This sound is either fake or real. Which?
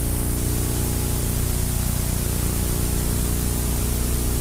real